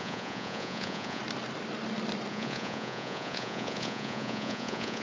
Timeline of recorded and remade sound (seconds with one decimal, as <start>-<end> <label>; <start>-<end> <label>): 0.0-1.2 remade; 1.2-2.3 recorded; 2.3-5.0 remade